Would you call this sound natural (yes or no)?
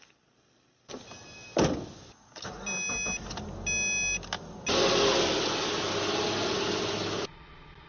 yes